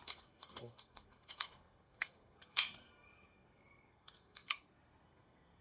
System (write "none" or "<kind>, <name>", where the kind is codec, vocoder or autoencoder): codec, SNAC